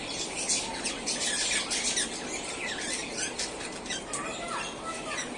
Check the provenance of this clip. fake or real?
real